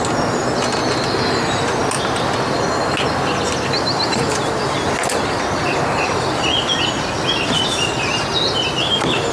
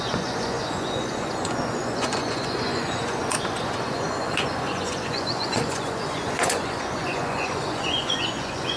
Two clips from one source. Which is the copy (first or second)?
second